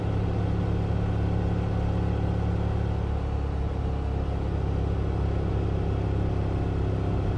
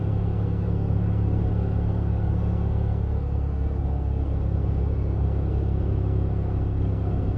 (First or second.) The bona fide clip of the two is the first